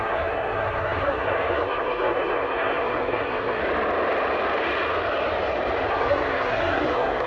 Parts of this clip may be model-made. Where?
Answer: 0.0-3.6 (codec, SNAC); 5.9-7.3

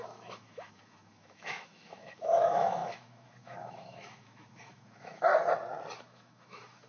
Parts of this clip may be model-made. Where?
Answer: 0.0-5.3 (autoencoder, DAC-VAE); 6.0-6.9

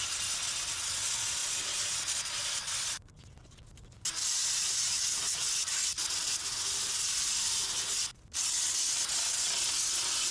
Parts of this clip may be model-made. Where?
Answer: none

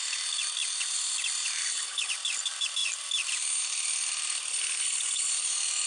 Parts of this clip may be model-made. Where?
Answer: 1.6-2.1 (codec, HILCodec); 4.5-5.3

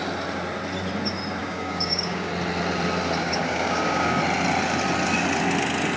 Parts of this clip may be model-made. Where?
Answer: 1.4-2.3 (codec, DAC); 3.2-4.2

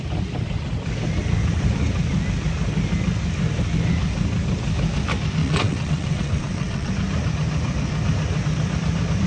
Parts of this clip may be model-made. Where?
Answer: 5.4-6.9 (vocoder, WaveNeXt)